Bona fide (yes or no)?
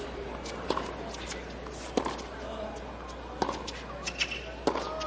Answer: yes